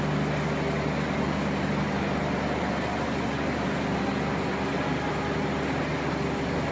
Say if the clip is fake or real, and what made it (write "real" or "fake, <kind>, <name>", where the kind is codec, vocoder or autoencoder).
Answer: real